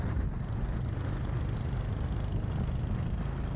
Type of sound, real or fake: real